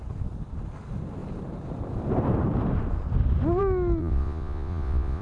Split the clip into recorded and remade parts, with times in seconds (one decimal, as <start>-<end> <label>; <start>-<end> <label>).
0.0-4.0 recorded; 4.0-5.2 remade

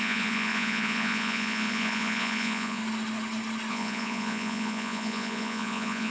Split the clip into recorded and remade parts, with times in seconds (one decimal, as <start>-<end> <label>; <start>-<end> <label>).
0.0-2.8 remade; 2.8-3.7 recorded; 3.7-6.1 remade

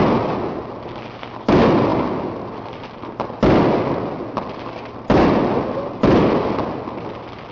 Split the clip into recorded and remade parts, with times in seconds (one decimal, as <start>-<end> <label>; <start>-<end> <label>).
0.0-7.5 recorded

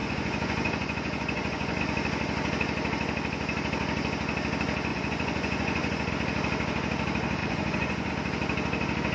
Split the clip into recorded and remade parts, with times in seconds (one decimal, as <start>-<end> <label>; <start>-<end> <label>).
0.0-1.8 remade; 1.8-4.9 recorded; 4.9-6.1 remade; 6.1-7.4 recorded; 7.4-8.1 remade; 8.1-9.1 recorded

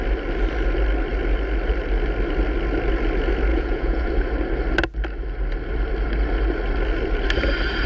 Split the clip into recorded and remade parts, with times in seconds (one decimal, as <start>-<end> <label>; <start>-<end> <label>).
0.0-3.5 recorded; 3.5-4.1 remade; 4.1-7.9 recorded